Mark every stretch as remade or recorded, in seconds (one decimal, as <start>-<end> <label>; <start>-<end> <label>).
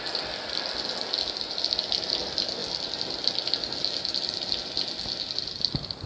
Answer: 0.0-6.1 recorded